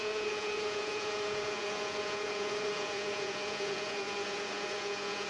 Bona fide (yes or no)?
no